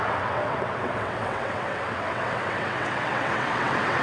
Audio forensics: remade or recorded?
remade